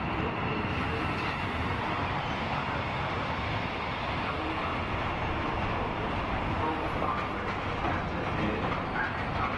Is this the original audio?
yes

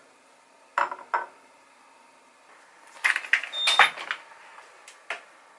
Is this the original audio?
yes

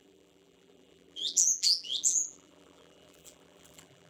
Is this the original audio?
no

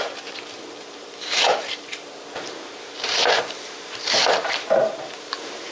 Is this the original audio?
no